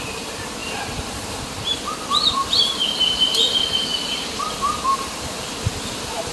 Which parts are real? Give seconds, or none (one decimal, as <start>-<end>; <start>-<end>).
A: none